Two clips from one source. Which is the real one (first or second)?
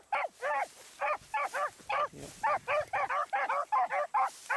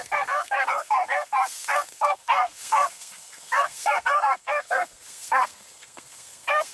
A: first